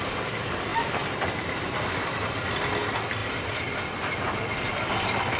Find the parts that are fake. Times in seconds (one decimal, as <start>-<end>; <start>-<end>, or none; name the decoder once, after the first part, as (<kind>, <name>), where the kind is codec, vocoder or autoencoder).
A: 0.7-1.7 (vocoder, BigVGAN v2); 3.2-4.9